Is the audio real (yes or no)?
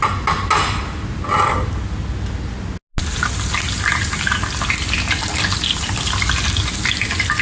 yes